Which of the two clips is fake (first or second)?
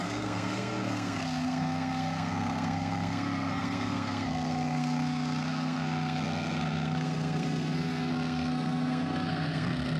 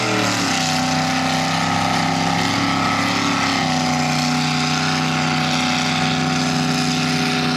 first